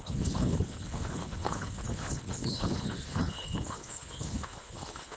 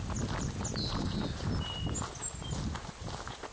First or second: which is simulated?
first